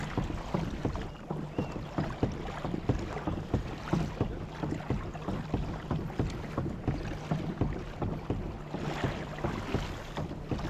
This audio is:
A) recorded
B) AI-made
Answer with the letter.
A